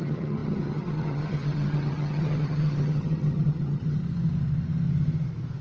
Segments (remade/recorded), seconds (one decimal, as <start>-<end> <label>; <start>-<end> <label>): 0.0-4.0 remade; 4.0-5.6 recorded